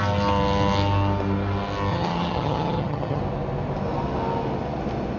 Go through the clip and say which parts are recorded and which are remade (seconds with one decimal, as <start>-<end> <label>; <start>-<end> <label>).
0.0-1.9 recorded; 1.9-3.2 remade; 3.2-5.2 recorded